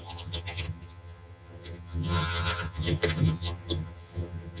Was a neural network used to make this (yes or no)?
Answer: yes